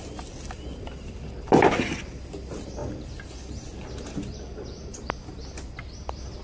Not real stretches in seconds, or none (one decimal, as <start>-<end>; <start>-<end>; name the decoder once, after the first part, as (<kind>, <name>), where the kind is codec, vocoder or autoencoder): none